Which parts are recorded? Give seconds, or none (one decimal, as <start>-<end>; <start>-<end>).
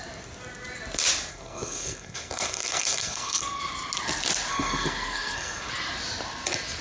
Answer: 0.0-1.3; 3.6-4.5; 5.7-6.8